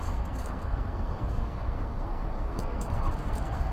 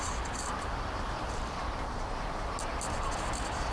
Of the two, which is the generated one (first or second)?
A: first